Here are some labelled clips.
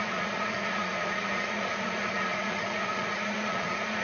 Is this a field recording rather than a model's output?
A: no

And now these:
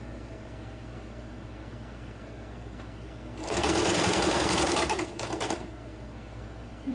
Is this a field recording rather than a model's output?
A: no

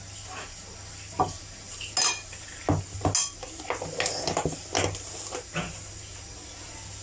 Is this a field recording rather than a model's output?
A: yes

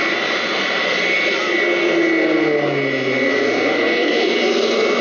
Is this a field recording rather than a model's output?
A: yes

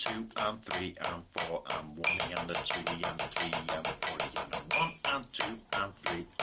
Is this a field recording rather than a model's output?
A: yes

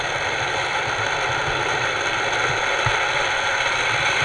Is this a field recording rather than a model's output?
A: yes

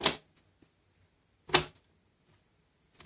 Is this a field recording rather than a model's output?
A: yes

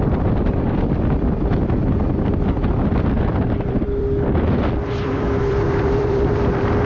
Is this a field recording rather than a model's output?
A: no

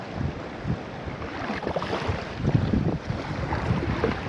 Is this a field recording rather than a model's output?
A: no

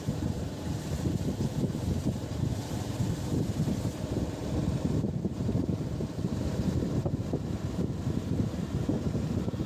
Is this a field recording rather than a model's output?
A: no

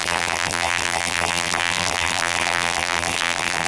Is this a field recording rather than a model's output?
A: no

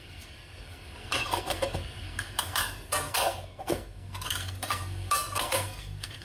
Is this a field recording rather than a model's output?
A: no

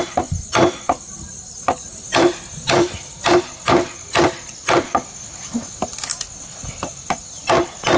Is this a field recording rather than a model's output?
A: yes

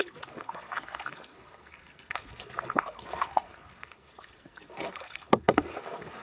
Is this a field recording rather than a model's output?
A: no